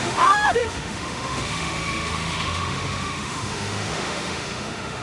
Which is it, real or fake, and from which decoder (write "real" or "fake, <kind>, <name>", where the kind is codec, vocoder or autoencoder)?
fake, autoencoder, DAC-VAE